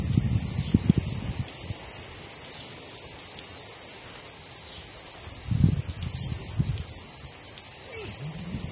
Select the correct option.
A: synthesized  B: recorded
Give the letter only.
B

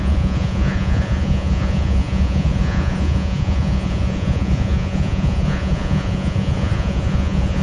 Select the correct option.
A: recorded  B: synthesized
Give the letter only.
B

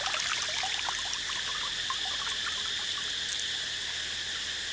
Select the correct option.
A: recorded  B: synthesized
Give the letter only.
A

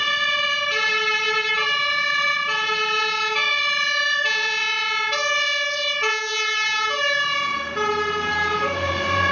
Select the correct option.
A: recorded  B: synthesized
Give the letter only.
B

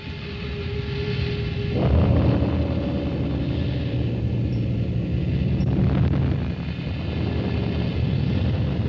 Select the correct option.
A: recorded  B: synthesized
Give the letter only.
A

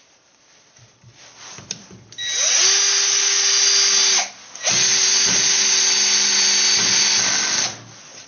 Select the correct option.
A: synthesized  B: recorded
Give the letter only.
B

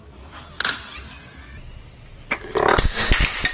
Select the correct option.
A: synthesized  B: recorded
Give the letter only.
B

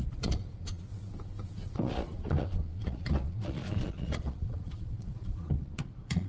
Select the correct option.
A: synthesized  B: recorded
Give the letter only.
A